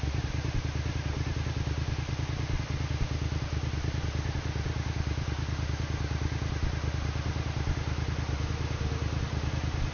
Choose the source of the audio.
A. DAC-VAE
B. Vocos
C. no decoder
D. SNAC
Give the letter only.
C